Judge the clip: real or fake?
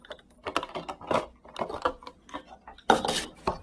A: real